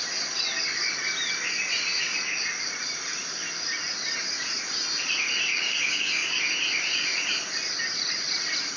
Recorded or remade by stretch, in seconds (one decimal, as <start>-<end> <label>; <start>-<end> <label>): 0.0-5.5 recorded; 5.5-6.4 remade; 6.4-8.8 recorded